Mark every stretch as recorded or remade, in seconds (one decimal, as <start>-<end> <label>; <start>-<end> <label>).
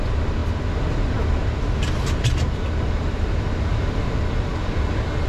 0.0-5.3 recorded